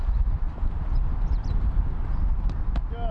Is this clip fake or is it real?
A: real